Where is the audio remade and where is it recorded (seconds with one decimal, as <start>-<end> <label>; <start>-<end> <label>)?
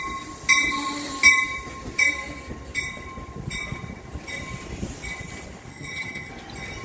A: 0.0-5.7 recorded; 5.7-6.3 remade; 6.3-6.8 recorded